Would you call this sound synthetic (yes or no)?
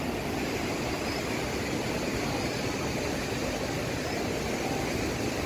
no